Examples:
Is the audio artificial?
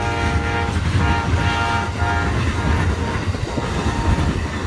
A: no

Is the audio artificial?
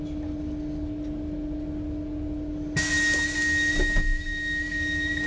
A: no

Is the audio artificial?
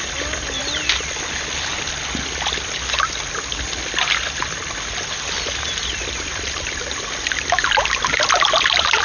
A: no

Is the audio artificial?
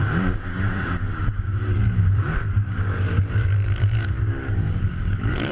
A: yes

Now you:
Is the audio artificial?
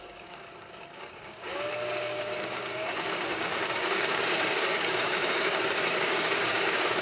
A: yes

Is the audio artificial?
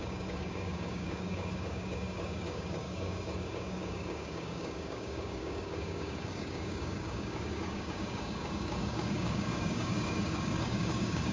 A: yes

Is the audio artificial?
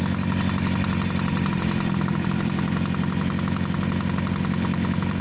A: no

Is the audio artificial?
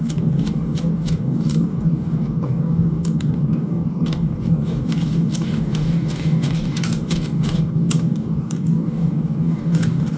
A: yes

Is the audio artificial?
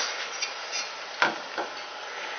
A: no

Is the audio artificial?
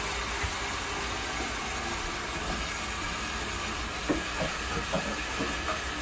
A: no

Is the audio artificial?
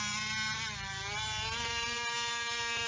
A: no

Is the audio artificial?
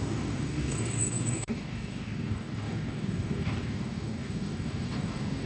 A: yes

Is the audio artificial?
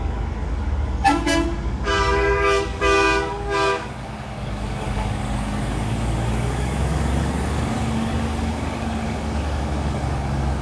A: yes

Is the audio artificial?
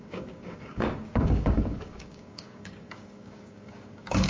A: yes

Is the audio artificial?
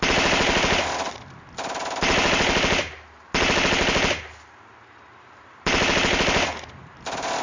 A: no